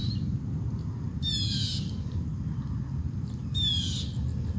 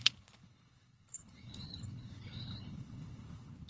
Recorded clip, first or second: first